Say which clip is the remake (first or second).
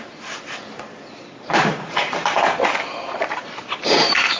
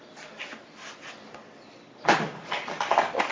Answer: first